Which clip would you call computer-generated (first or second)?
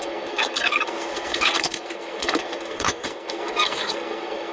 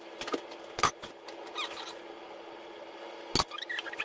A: first